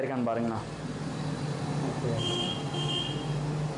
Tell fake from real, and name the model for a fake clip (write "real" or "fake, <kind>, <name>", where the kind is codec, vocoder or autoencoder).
real